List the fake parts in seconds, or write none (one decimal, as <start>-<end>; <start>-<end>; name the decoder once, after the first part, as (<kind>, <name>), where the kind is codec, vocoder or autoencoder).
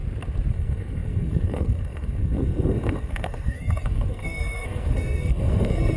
0.5-6.0 (codec, SNAC)